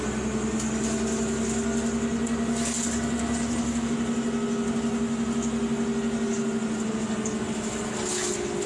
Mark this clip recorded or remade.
recorded